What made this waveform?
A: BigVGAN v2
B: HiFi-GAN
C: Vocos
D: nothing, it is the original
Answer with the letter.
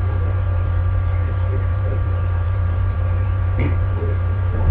A